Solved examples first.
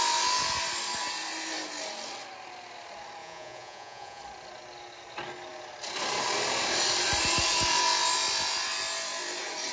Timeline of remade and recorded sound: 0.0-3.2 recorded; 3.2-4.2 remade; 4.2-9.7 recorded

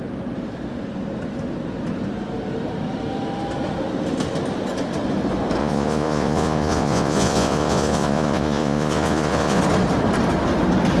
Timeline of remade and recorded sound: 0.0-5.6 recorded; 5.6-9.6 remade; 9.6-11.0 recorded

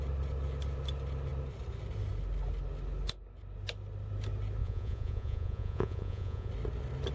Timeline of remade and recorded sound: 0.0-4.6 recorded; 4.6-6.5 remade; 6.5-7.1 recorded

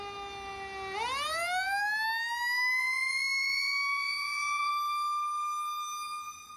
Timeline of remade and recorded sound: 0.0-2.8 recorded; 2.8-4.7 remade; 4.7-6.6 recorded

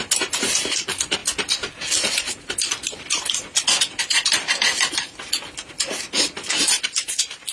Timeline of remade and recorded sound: 0.0-7.5 recorded

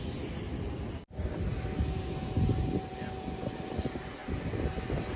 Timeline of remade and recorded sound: 0.0-5.2 recorded

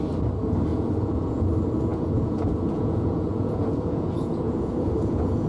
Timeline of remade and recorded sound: 0.0-0.7 recorded; 0.7-1.5 remade; 1.5-1.9 recorded; 1.9-5.5 remade